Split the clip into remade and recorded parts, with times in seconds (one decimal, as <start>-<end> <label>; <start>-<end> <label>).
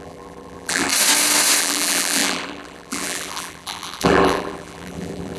0.0-0.9 remade; 0.9-1.6 recorded; 1.6-5.4 remade